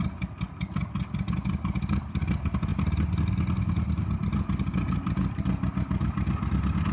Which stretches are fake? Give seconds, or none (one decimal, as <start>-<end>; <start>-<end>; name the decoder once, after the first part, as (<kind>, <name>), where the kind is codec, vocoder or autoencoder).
none